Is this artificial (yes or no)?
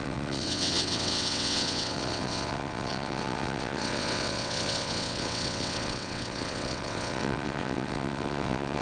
yes